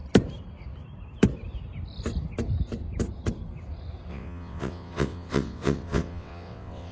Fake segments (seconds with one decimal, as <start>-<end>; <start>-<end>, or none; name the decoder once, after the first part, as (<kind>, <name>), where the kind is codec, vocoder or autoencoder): 4.1-6.9 (vocoder, WaveNeXt)